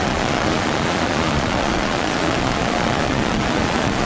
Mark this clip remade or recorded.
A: remade